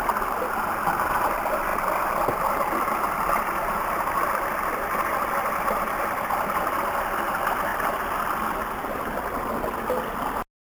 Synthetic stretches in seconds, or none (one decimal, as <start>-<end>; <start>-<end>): 1.7-5.5

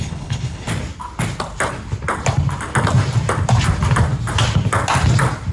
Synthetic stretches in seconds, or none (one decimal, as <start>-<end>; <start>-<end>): 0.0-0.7